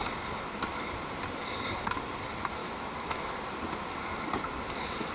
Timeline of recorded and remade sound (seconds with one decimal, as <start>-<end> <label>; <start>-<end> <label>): 0.0-2.6 recorded; 2.6-3.4 remade; 3.4-5.1 recorded

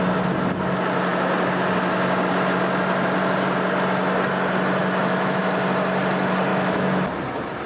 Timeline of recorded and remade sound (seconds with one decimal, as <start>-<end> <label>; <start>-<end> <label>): 0.0-4.8 recorded; 4.8-5.4 remade; 5.4-6.5 recorded; 6.5-7.0 remade; 7.0-7.7 recorded

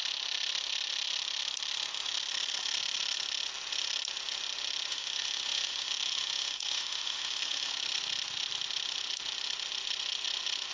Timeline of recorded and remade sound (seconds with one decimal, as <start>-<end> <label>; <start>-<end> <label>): 0.0-4.9 recorded; 4.9-7.7 remade; 7.7-10.7 recorded

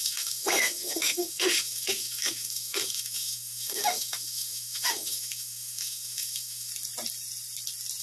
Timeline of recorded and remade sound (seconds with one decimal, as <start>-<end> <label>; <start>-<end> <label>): 0.0-6.7 remade; 6.7-8.0 recorded

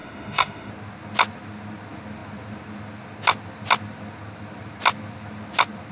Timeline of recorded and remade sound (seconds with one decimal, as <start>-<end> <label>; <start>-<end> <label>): 0.0-0.7 remade; 0.7-5.9 recorded

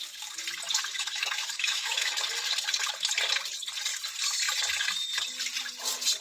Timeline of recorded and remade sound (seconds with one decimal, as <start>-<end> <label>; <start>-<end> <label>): 0.0-0.9 recorded; 0.9-2.1 remade; 2.1-6.2 recorded

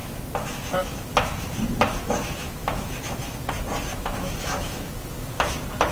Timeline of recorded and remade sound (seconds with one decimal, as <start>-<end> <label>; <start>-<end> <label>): 0.0-3.5 remade; 3.5-3.9 recorded; 3.9-5.5 remade; 5.5-5.9 recorded